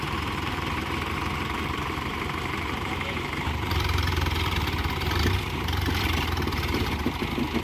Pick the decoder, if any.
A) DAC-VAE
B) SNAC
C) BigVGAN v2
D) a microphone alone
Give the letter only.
C